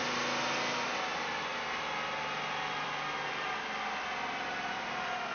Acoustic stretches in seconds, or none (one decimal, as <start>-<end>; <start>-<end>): 0.0-5.3